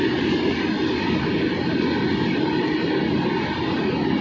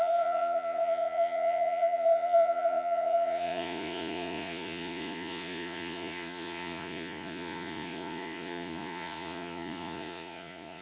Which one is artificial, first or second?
second